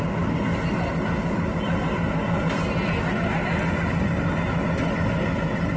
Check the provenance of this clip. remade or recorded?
recorded